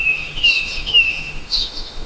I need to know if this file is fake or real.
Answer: fake